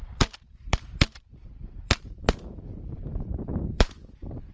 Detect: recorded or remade remade